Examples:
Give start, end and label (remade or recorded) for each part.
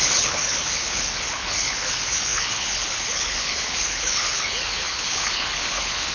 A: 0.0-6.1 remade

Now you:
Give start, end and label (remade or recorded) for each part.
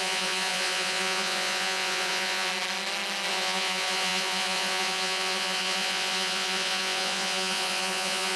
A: 0.0-2.5 remade; 2.5-3.3 recorded; 3.3-8.4 remade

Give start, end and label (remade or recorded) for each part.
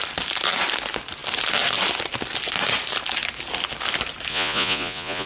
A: 0.0-4.3 recorded; 4.3-5.3 remade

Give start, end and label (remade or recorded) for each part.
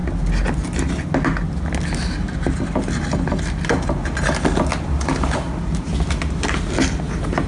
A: 0.0-7.5 recorded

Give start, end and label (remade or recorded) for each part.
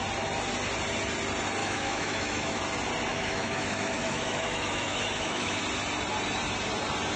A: 0.0-1.6 recorded; 1.6-2.6 remade; 2.6-3.1 recorded; 3.1-5.6 remade; 5.6-7.2 recorded